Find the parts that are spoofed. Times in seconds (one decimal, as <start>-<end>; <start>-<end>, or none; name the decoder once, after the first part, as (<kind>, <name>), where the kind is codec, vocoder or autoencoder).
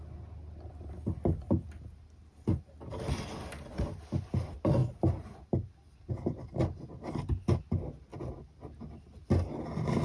none